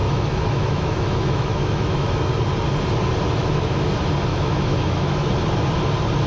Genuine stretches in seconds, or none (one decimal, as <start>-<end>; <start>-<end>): 2.3-3.4; 3.9-4.3; 5.3-6.3